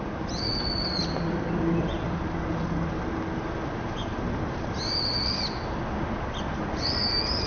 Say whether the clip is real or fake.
real